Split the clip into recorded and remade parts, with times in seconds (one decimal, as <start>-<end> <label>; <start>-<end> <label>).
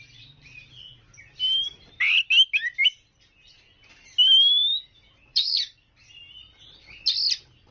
0.0-5.3 recorded; 5.3-5.9 remade; 5.9-7.7 recorded